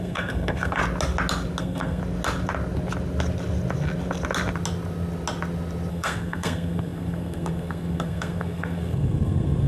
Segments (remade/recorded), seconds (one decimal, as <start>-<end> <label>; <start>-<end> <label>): 0.0-0.8 remade; 0.8-1.6 recorded; 1.6-2.0 remade; 2.0-5.9 recorded; 5.9-9.7 remade